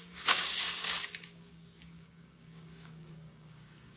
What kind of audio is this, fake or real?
fake